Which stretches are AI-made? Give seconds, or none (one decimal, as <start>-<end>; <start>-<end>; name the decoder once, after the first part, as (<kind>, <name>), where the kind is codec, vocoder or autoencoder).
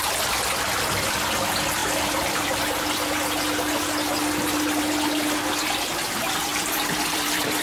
1.8-2.6 (vocoder, BigVGAN v2); 6.5-7.6